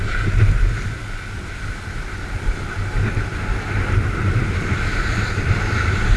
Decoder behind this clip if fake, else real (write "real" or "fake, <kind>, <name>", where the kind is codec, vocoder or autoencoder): real